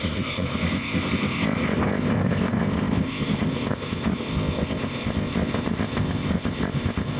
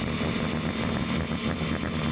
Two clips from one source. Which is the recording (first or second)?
second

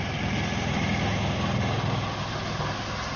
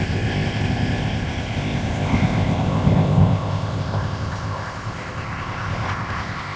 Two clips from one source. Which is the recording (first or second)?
first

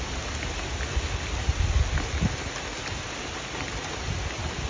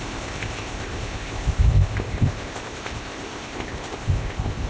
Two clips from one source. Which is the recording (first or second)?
first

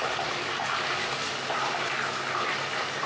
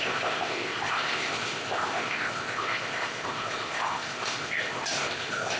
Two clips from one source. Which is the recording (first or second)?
first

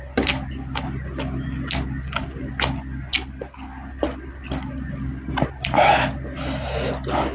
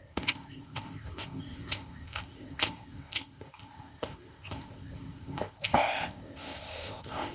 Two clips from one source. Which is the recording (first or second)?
first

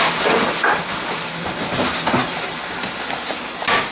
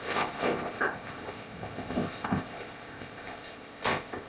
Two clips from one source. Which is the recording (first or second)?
first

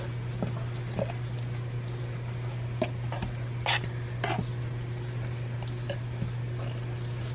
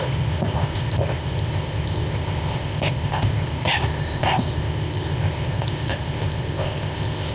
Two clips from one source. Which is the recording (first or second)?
first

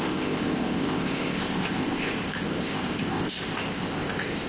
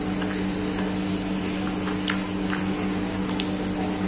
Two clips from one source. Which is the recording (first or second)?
second